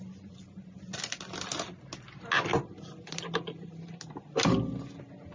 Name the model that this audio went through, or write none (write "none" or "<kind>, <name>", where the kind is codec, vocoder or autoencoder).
none